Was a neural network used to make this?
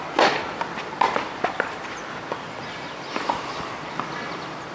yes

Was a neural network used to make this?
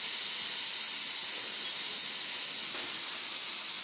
no